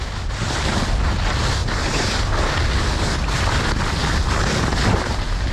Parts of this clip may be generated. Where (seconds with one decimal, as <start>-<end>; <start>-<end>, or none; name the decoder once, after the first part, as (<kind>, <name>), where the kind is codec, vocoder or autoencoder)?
none